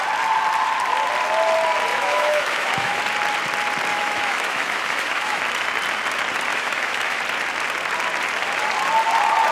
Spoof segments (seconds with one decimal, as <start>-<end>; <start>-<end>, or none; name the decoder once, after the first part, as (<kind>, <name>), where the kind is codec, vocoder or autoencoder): 1.9-3.0 (autoencoder, DAC-VAE); 3.9-5.4; 6.5-7.2